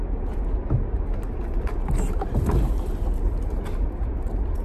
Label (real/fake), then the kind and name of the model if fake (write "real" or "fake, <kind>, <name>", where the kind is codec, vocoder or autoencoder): real